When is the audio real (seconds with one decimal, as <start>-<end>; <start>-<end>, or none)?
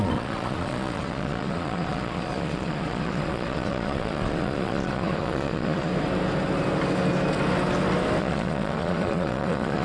5.9-8.2